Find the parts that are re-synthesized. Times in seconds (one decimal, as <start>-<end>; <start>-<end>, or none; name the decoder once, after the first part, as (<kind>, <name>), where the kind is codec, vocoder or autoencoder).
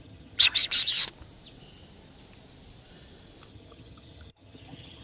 0.0-0.6 (vocoder, HiFi-GAN); 3.5-5.0